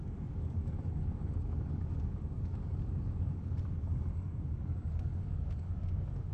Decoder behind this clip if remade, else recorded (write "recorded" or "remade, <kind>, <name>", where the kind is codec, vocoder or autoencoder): remade, codec, DAC